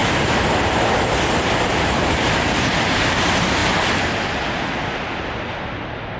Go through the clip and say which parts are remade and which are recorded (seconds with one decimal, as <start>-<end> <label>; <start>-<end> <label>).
0.0-6.2 recorded